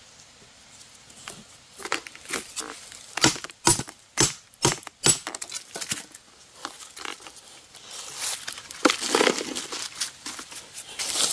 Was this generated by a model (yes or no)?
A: no